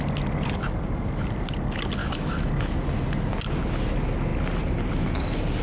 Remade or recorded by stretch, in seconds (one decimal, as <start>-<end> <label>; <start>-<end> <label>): 0.0-2.0 recorded; 2.0-2.5 remade; 2.5-5.6 recorded